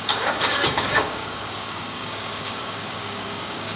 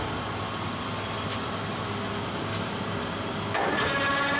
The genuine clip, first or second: second